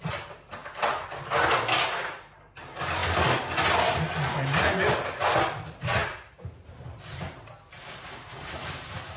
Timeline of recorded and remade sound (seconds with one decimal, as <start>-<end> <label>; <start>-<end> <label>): 0.0-9.2 recorded

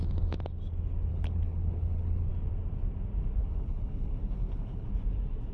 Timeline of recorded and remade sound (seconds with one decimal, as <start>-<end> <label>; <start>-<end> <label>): 0.0-1.1 recorded; 1.1-2.3 remade; 2.3-3.4 recorded; 3.4-4.9 remade; 4.9-5.5 recorded

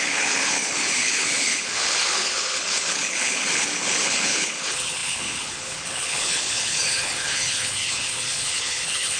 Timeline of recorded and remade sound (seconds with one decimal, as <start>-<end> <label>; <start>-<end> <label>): 0.0-9.2 remade

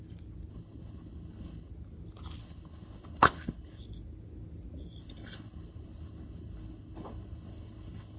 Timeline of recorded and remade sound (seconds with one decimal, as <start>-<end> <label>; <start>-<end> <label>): 0.0-0.5 recorded; 0.5-1.7 remade; 1.7-2.4 recorded; 2.4-3.8 remade; 3.8-5.0 recorded; 5.0-8.2 remade

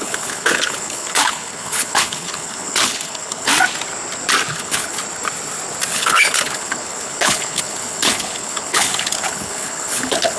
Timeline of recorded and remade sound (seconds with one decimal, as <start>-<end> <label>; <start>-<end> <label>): 0.0-3.5 remade; 3.5-4.5 recorded; 4.5-5.0 remade; 5.0-5.9 recorded; 5.9-10.4 remade

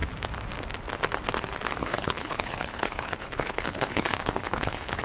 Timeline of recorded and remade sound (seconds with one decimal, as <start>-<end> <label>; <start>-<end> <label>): 0.0-1.8 recorded; 1.8-5.0 remade

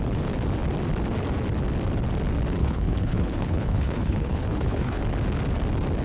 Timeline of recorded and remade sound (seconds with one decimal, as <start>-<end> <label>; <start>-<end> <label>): 0.0-2.6 recorded; 2.6-5.0 remade; 5.0-6.0 recorded